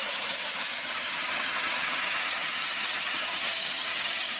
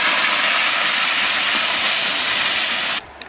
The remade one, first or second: first